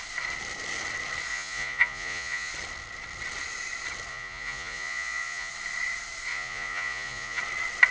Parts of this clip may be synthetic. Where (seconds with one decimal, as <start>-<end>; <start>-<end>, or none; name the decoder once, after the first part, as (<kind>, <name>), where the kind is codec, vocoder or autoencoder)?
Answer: 1.3-2.5 (vocoder, Vocos); 4.1-5.5; 6.3-7.4